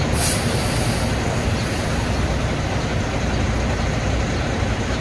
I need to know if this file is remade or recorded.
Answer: recorded